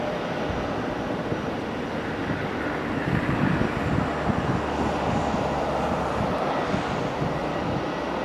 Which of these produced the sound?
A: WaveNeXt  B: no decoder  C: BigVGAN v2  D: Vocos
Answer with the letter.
B